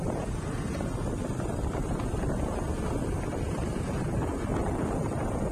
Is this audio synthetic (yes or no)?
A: no